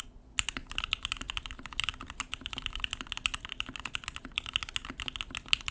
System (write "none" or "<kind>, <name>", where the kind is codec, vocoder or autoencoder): none